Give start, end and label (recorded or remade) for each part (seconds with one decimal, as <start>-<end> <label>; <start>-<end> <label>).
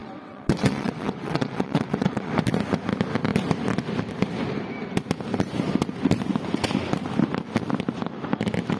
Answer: 0.0-2.3 remade; 2.3-8.8 recorded